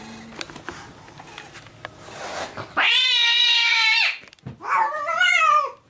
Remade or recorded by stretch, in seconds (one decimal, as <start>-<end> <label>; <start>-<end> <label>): 0.0-3.6 recorded; 3.6-5.4 remade; 5.4-5.9 recorded